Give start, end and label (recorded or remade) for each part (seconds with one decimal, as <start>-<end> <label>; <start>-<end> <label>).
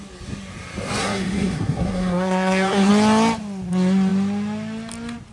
0.0-1.0 recorded; 1.0-2.9 remade; 2.9-5.3 recorded